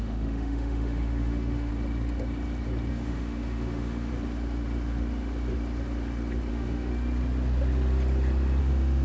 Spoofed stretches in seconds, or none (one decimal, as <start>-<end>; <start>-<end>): 0.0-1.7; 2.9-4.1; 6.5-6.9; 8.6-9.0